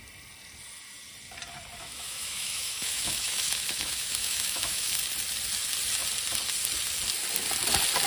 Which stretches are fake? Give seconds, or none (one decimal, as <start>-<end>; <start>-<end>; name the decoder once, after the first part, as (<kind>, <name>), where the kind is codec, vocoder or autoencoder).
1.8-5.0 (autoencoder, DAC-VAE)